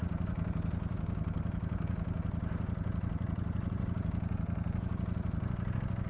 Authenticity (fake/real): real